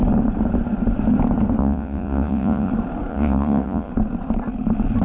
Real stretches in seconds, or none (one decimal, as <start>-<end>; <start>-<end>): 0.0-1.6; 2.7-3.1; 3.9-5.0